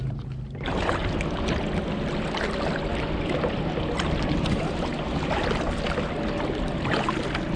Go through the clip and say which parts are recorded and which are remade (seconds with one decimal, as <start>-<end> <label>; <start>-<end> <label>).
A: 0.0-1.0 remade; 1.0-4.2 recorded; 4.2-4.9 remade; 4.9-7.6 recorded